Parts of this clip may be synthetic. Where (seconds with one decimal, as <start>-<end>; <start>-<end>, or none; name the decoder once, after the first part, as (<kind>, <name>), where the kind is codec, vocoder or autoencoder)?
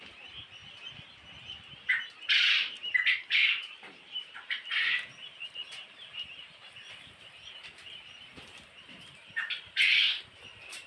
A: 0.0-0.6 (vocoder, BigVGAN v2); 1.7-10.9